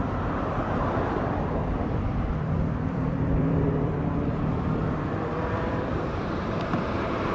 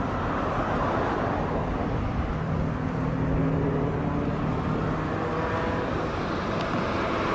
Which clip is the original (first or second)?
second